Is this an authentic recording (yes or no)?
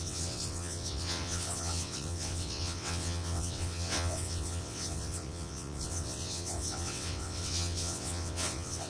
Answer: no